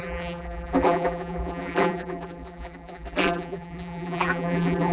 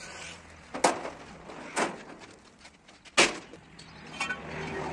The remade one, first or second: first